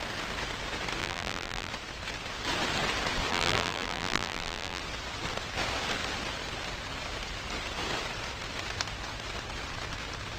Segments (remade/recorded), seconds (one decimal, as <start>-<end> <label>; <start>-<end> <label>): 0.0-1.0 recorded; 1.0-1.7 remade; 1.7-3.3 recorded; 3.3-4.8 remade; 4.8-10.4 recorded

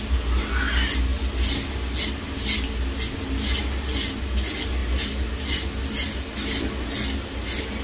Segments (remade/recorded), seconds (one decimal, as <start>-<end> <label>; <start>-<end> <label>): 0.0-7.8 recorded

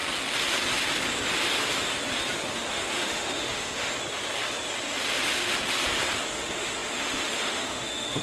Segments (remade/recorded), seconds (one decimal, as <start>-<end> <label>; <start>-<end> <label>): 0.0-2.7 recorded; 2.7-3.9 remade; 3.9-6.2 recorded; 6.2-8.2 remade

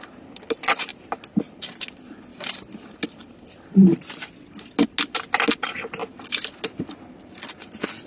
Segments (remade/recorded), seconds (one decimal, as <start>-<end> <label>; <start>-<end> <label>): 0.0-8.1 recorded

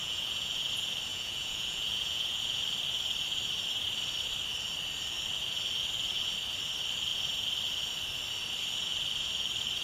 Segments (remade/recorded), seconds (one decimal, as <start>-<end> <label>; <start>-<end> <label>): 0.0-0.7 remade; 0.7-1.1 recorded; 1.1-2.6 remade; 2.6-9.8 recorded

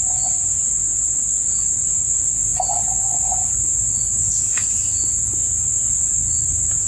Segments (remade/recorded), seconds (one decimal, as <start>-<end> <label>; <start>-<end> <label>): 0.0-6.9 recorded

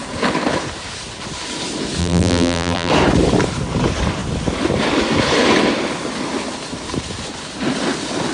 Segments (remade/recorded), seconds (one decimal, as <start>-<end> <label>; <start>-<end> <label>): 0.0-2.0 recorded; 2.0-2.9 remade; 2.9-8.3 recorded